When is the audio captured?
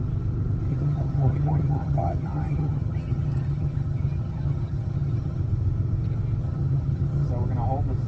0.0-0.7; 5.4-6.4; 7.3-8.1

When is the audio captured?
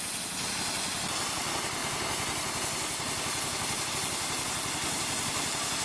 0.0-5.8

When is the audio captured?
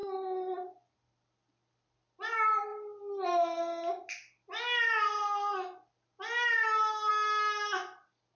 0.0-8.3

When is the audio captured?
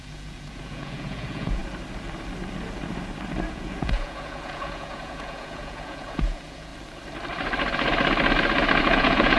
1.6-3.5; 6.7-8.8